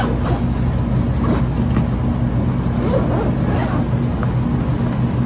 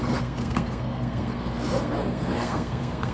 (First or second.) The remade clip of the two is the second